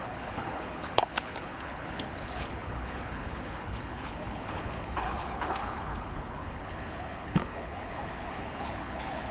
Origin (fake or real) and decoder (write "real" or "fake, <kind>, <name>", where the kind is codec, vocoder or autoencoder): fake, codec, HILCodec